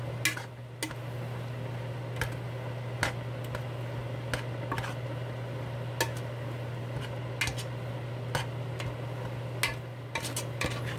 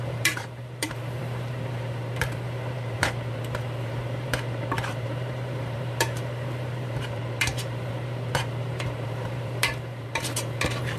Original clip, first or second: first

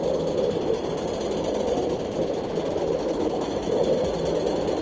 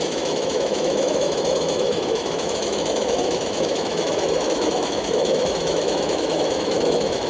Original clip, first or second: first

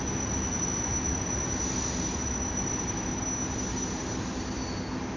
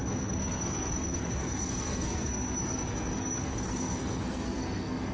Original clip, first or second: first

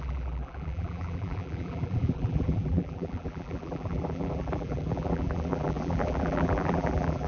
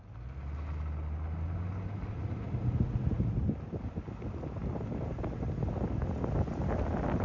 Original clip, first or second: second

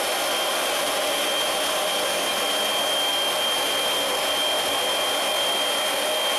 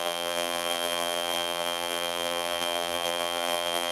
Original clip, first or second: first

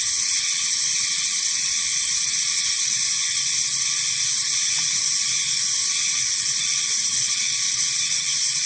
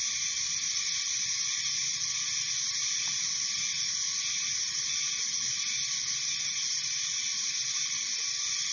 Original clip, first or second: second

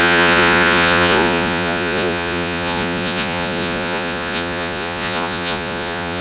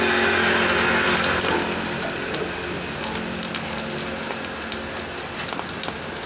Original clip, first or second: second